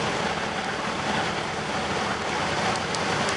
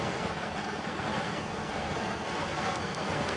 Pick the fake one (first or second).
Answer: second